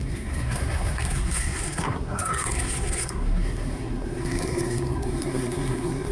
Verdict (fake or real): fake